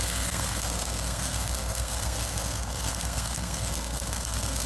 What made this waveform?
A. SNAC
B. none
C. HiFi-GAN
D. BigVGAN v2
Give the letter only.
A